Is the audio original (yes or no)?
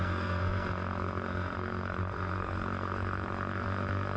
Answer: no